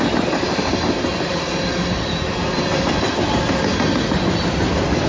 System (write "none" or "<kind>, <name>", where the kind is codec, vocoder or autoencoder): none